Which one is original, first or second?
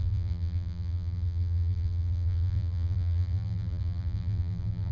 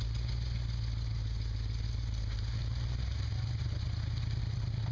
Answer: second